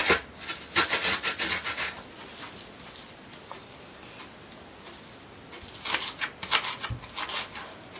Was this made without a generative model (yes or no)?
yes